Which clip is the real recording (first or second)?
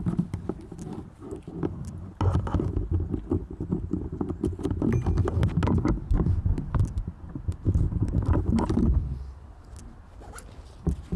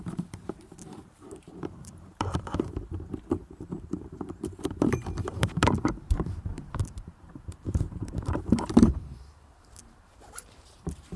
first